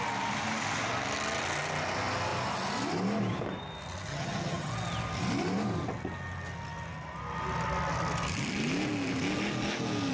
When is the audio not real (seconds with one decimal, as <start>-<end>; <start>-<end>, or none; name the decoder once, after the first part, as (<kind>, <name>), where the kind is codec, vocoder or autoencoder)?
4.1-4.7 (vocoder, HiFi-GAN)